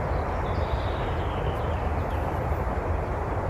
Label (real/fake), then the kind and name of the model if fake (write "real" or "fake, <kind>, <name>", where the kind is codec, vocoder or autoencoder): real